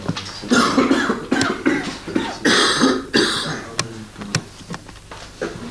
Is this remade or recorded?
recorded